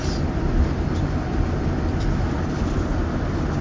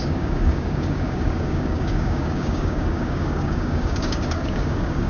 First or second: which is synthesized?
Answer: second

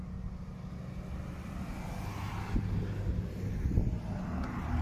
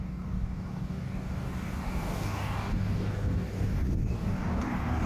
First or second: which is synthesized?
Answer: second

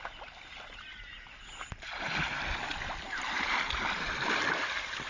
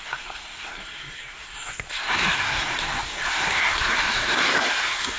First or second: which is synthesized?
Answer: second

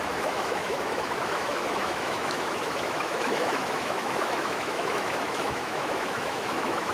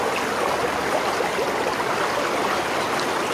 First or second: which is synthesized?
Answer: first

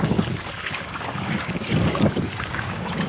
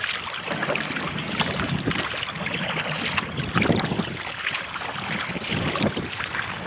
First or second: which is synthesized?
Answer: first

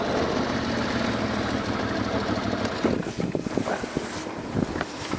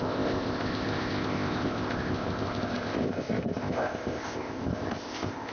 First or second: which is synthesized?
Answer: second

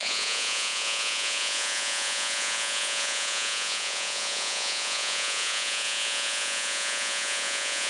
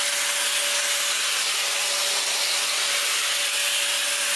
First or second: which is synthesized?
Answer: first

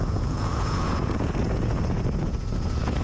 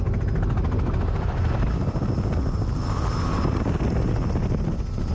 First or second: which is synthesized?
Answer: first